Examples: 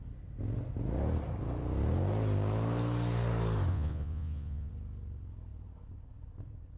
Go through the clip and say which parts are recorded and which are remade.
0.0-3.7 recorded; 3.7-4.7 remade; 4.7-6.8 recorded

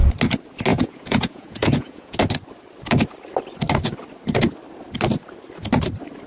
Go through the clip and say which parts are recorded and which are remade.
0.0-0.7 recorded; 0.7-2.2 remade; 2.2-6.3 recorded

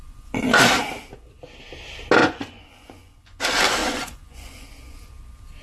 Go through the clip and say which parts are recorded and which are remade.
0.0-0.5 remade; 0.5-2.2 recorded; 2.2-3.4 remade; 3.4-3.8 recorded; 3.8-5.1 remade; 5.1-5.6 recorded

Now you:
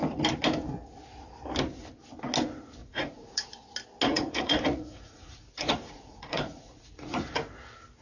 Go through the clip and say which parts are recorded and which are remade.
0.0-2.8 recorded; 2.8-3.5 remade; 3.5-4.1 recorded; 4.1-7.3 remade; 7.3-8.0 recorded

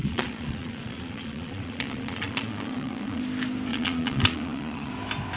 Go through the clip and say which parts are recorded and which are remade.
0.0-3.2 remade; 3.2-3.7 recorded; 3.7-4.9 remade; 4.9-5.4 recorded

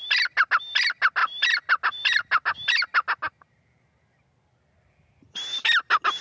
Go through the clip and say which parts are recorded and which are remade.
0.0-6.2 recorded

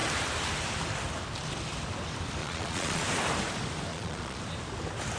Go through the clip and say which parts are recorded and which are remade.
0.0-2.4 recorded; 2.4-3.0 remade; 3.0-3.9 recorded; 3.9-4.4 remade; 4.4-5.2 recorded